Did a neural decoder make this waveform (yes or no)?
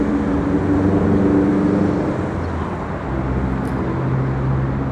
no